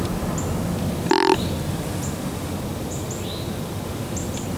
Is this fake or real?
real